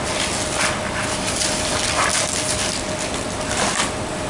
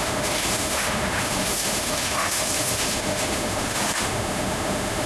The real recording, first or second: first